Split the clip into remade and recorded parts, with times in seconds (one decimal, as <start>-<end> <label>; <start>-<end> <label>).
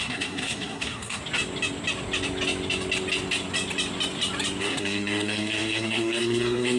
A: 0.0-1.2 remade; 1.2-4.6 recorded; 4.6-6.8 remade